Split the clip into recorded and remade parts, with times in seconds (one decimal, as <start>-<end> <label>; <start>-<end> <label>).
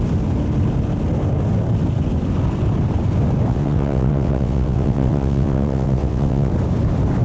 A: 0.0-3.5 recorded; 3.5-6.5 remade; 6.5-7.2 recorded